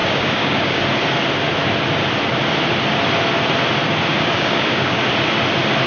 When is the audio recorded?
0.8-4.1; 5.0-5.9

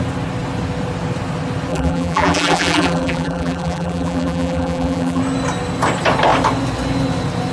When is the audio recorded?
0.0-1.7; 5.2-7.5

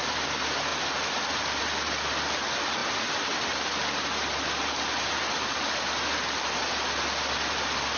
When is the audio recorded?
0.0-8.0

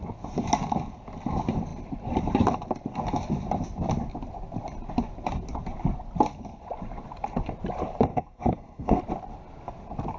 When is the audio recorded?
0.0-8.1; 9.0-10.2